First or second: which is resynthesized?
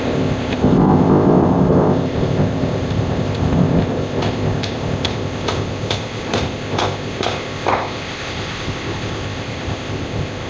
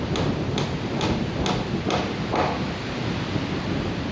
first